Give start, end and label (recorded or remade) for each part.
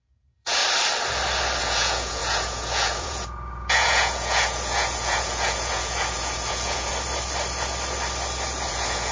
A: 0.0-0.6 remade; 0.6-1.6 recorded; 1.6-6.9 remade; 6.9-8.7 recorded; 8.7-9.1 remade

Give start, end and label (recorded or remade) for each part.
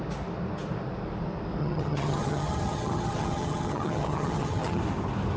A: 0.0-1.6 recorded; 1.6-4.8 remade; 4.8-5.4 recorded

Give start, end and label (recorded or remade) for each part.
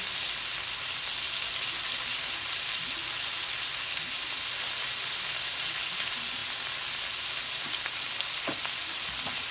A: 0.0-9.5 recorded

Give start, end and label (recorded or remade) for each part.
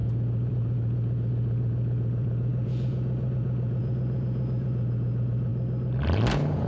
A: 0.0-5.5 remade; 5.5-6.3 recorded; 6.3-6.7 remade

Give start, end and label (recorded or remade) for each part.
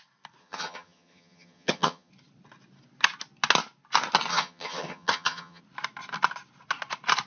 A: 0.0-0.4 recorded; 0.4-2.1 remade; 2.1-4.3 recorded; 4.3-5.6 remade; 5.6-7.3 recorded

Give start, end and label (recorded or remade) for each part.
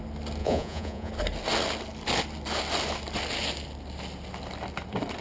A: 0.0-0.4 recorded; 0.4-1.1 remade; 1.1-5.2 recorded